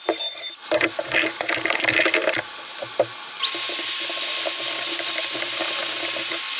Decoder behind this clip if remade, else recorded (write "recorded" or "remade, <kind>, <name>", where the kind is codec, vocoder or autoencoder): recorded